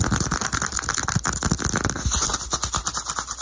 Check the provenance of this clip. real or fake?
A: real